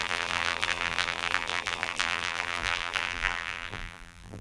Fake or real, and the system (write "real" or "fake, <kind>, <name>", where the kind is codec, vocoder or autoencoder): fake, vocoder, BigVGAN v2